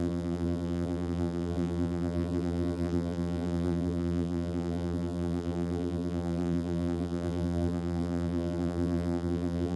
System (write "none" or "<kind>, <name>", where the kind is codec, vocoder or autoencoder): vocoder, BigVGAN v2